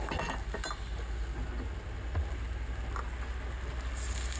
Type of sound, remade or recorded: recorded